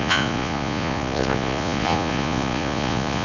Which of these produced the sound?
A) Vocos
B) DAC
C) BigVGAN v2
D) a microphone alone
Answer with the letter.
A